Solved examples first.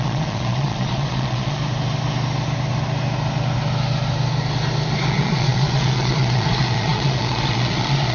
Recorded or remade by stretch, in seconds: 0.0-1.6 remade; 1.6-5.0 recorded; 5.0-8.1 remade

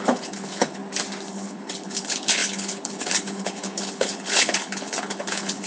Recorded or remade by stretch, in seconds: 0.0-0.8 remade; 0.8-1.3 recorded; 1.3-5.7 remade

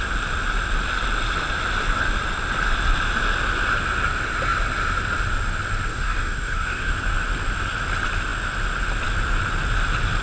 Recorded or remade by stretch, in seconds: 0.0-5.9 recorded; 5.9-6.9 remade; 6.9-10.2 recorded

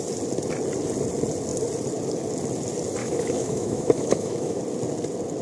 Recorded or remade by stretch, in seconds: 0.0-3.0 recorded; 3.0-4.6 remade; 4.6-5.4 recorded

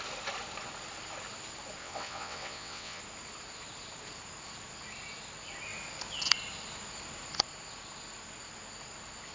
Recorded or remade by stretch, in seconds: 0.0-1.8 recorded; 1.8-3.0 remade; 3.0-9.3 recorded